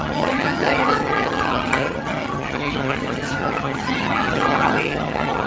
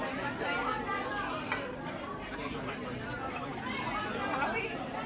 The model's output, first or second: first